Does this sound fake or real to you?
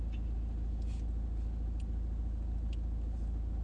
real